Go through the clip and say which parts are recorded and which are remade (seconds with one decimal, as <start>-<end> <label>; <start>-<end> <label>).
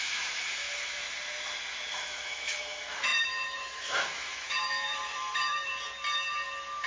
0.0-1.0 remade; 1.0-1.9 recorded; 1.9-5.7 remade; 5.7-6.9 recorded